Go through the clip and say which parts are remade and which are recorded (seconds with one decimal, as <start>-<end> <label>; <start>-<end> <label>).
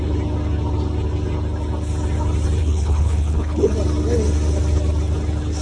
0.0-2.6 recorded; 2.6-3.7 remade; 3.7-5.6 recorded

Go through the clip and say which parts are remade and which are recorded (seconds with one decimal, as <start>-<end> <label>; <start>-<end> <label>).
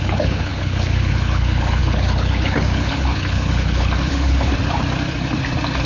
0.0-4.5 remade; 4.5-5.9 recorded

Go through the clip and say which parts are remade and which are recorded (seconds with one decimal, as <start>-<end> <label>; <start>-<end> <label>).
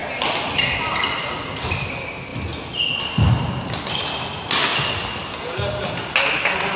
0.0-6.8 recorded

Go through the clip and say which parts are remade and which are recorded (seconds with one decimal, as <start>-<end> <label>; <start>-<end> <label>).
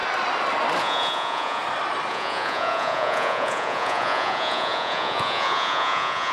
0.0-0.8 recorded; 0.8-1.6 remade; 1.6-2.1 recorded; 2.1-6.3 remade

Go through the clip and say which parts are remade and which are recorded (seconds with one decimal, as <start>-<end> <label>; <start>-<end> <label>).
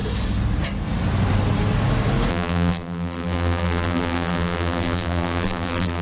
0.0-2.3 recorded; 2.3-6.0 remade